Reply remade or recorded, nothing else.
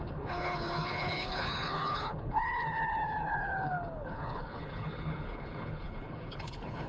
remade